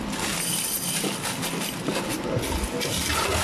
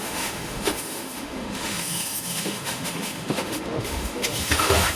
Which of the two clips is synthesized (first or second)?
second